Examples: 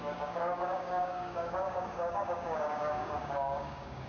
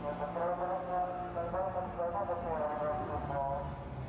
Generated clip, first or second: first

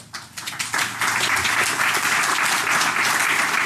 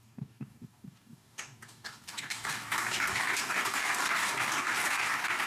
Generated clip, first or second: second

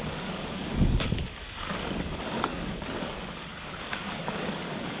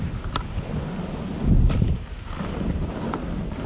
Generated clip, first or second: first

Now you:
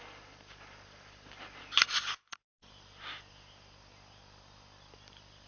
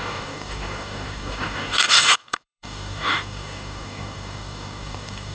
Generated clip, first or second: second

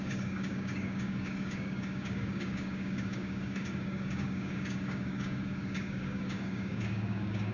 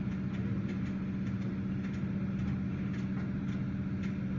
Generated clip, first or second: first